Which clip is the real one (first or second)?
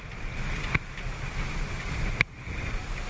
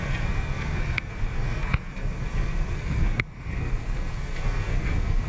first